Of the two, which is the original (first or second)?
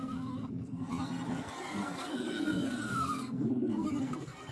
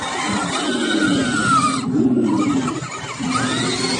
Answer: second